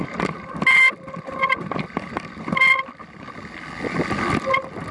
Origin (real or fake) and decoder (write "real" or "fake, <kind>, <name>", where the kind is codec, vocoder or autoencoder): real